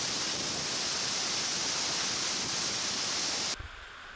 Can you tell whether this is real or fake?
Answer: real